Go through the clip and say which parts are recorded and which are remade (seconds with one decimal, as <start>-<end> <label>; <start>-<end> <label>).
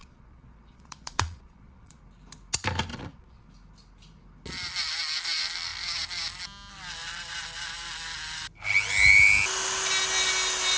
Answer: 0.0-2.0 remade; 2.0-2.9 recorded; 2.9-3.5 remade; 3.5-10.8 recorded